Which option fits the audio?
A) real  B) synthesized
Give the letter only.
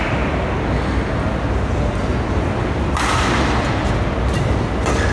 A